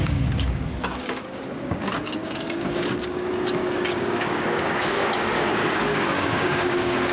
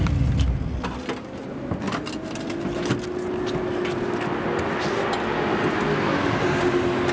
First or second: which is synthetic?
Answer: first